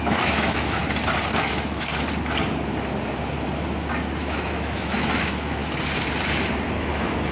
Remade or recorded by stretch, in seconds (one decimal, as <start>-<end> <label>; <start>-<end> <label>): 0.0-0.8 remade; 0.8-1.4 recorded; 1.4-1.9 remade; 1.9-4.2 recorded; 4.2-5.6 remade; 5.6-6.8 recorded; 6.8-7.3 remade